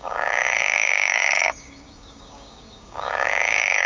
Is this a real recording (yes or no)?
no